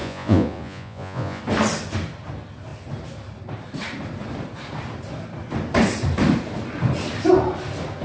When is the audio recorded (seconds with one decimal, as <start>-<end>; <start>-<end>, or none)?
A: 1.4-8.0